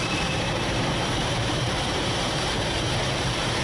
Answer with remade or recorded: remade